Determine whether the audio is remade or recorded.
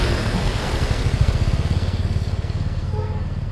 remade